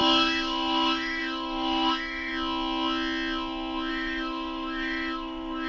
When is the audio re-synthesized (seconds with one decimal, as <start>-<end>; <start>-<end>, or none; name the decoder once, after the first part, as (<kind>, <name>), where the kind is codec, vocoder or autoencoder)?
0.0-2.3 (autoencoder, DAC-VAE); 3.9-5.7